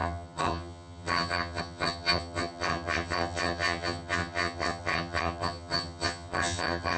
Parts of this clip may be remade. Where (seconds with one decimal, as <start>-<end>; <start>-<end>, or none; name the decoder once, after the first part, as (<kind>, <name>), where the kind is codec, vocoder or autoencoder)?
0.0-7.0 (vocoder, HiFi-GAN)